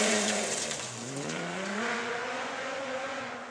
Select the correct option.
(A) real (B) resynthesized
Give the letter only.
B